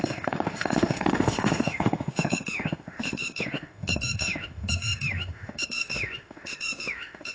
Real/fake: fake